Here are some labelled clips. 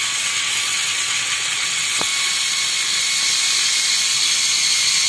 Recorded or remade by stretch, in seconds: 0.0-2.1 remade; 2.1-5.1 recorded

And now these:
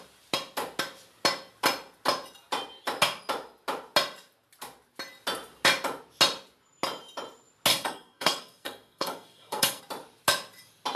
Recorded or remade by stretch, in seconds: 0.0-7.7 recorded; 7.7-9.8 remade; 9.8-11.0 recorded

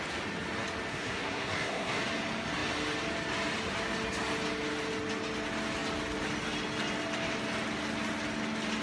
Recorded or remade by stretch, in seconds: 0.0-0.9 recorded; 0.9-2.0 remade; 2.0-8.8 recorded

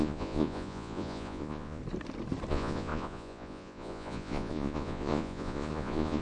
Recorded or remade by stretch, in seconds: 0.0-1.8 remade; 1.8-2.5 recorded; 2.5-6.2 remade

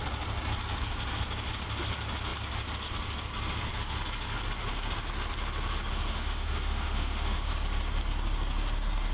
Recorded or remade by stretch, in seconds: 0.0-5.9 recorded; 5.9-7.5 remade; 7.5-9.1 recorded

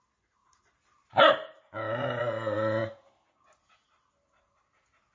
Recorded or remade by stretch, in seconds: 0.0-5.1 recorded

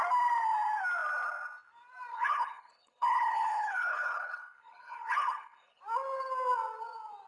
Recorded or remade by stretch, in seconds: 0.0-2.1 recorded; 2.1-5.8 remade; 5.8-7.3 recorded

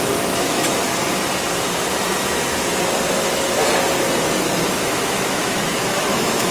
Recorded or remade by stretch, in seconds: 0.0-0.8 remade; 0.8-4.7 recorded; 4.7-6.5 remade